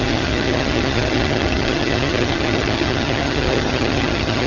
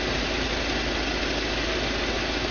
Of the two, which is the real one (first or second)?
second